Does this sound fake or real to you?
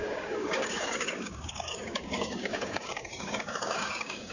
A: fake